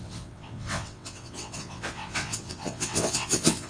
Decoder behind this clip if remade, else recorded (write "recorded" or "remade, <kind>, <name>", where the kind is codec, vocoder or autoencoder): remade, vocoder, WaveNeXt